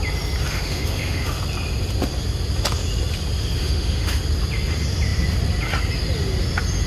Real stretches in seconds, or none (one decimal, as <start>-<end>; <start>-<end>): 0.0-0.5; 1.4-3.6; 4.2-6.9